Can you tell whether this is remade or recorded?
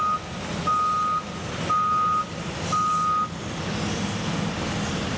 recorded